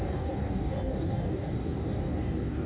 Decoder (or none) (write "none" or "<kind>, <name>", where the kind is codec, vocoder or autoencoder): codec, DAC